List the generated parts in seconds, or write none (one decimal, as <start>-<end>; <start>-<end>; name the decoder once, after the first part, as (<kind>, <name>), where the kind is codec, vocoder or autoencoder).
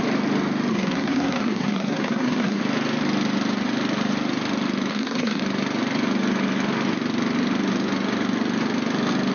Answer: 0.7-2.6 (codec, SNAC); 4.9-5.4